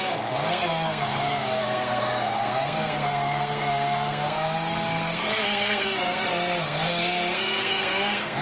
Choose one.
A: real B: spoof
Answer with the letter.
B